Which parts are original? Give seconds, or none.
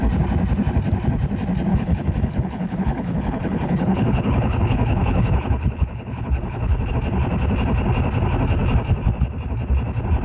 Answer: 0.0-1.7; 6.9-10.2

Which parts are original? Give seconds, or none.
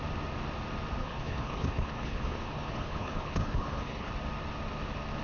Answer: 0.0-1.0; 4.1-5.2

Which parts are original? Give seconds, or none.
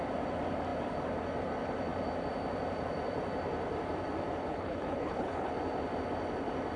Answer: 0.0-4.5; 5.5-6.8